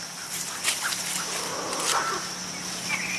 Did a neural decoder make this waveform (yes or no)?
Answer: no